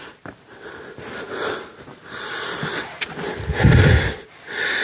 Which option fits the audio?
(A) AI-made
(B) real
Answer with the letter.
B